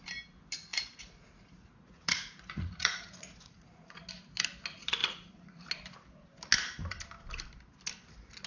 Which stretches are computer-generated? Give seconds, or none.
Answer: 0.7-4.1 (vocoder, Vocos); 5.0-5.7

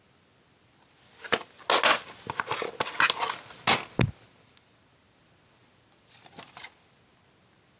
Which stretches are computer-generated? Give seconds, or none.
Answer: none